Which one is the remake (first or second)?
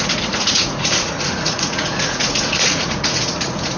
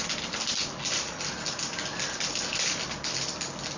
first